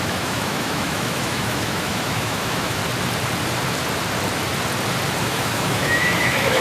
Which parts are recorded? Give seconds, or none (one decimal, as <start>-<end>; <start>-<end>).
2.8-5.2